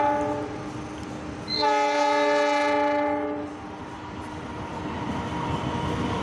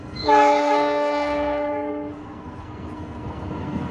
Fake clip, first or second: second